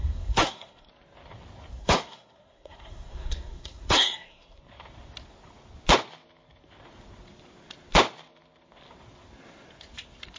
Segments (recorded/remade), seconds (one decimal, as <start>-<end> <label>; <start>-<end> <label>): 0.0-0.9 remade; 0.9-1.7 recorded; 1.7-4.6 remade; 4.6-10.4 recorded